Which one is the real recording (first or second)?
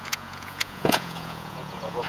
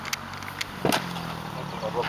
second